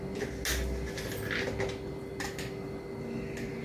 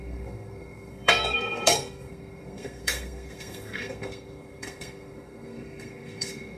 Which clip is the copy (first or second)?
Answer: second